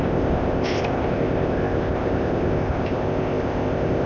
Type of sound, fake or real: fake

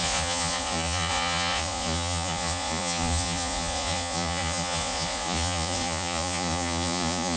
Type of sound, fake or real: fake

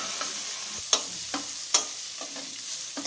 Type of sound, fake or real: real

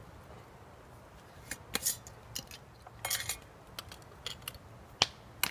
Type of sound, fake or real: real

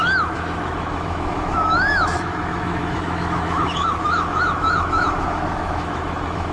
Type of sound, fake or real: fake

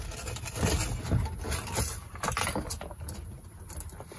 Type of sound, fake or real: real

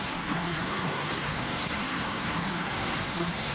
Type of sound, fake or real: fake